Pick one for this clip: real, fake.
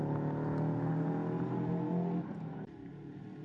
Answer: real